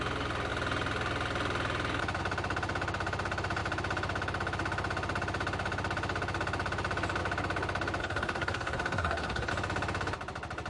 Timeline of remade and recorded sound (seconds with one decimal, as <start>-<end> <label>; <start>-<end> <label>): 0.0-8.0 recorded; 8.0-9.5 remade; 9.5-10.7 recorded